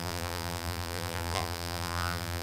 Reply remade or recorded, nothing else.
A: remade